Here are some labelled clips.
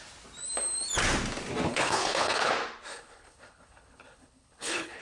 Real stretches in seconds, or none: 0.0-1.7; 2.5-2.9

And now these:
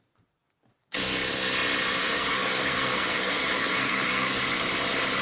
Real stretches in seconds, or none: 0.0-2.0; 4.4-5.2